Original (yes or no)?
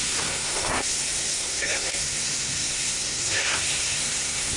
no